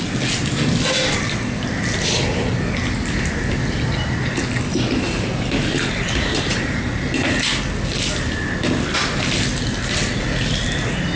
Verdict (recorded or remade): recorded